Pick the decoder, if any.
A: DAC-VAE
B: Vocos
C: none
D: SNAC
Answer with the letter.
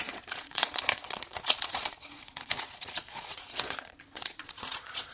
B